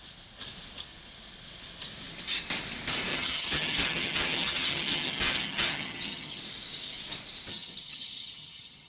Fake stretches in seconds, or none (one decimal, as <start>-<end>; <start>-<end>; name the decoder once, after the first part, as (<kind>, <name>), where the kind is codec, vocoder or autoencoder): 3.1-6.4 (vocoder, HiFi-GAN); 7.5-8.9